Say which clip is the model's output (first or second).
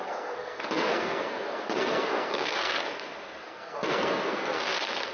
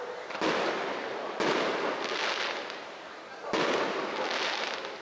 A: first